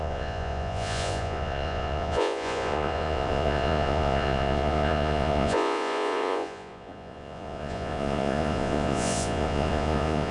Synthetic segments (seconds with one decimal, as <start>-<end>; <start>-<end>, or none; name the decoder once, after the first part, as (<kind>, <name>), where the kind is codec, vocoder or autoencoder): 0.0-10.3 (vocoder, Vocos)